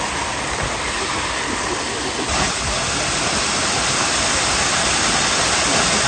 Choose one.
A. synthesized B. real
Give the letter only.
B